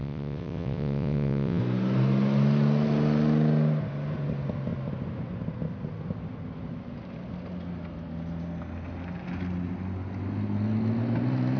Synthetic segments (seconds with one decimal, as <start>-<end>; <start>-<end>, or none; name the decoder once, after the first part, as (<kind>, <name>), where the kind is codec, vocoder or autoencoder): 0.0-1.6 (vocoder, WaveNeXt)